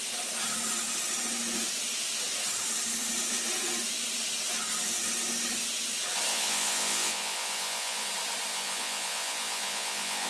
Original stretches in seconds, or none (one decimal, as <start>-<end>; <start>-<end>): 0.0-6.3; 8.1-8.5